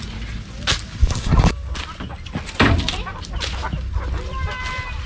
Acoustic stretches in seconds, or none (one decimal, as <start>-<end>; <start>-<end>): 0.0-1.0; 1.7-5.1